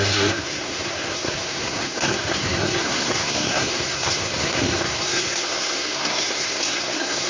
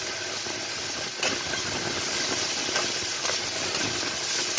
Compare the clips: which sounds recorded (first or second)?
second